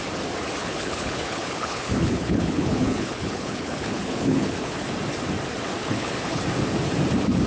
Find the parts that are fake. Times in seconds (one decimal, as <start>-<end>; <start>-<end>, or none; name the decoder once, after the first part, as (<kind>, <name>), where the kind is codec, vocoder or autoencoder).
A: 0.6-4.8 (codec, HILCodec); 5.8-6.4